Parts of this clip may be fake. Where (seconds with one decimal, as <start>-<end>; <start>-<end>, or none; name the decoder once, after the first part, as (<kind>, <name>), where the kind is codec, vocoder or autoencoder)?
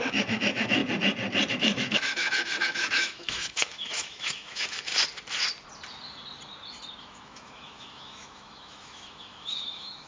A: 0.0-0.8 (autoencoder, DAC-VAE); 1.5-4.9; 7.0-10.1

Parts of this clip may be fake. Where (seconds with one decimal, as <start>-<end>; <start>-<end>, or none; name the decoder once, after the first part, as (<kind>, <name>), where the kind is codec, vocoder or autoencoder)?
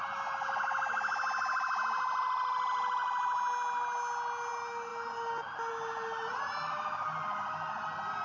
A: none